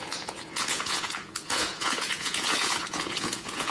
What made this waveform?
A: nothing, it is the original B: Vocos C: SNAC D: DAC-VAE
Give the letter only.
B